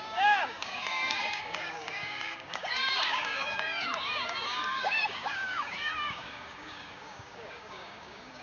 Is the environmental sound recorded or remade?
remade